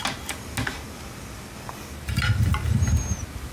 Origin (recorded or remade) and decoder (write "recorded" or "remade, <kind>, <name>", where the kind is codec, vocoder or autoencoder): recorded